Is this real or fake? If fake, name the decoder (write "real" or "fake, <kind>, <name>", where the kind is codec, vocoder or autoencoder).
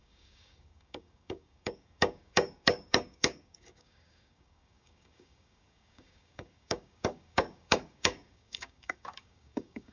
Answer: fake, codec, DAC